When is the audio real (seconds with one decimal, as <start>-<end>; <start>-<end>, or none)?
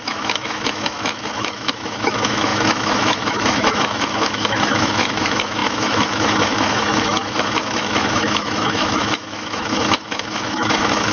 none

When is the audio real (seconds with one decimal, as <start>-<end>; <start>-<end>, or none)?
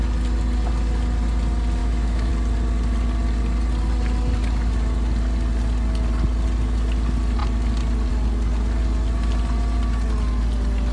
0.0-1.8; 2.3-10.9